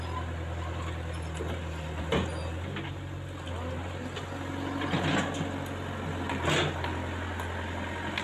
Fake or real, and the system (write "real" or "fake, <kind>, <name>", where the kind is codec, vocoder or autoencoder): real